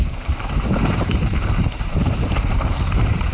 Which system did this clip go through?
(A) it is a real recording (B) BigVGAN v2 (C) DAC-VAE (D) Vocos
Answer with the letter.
B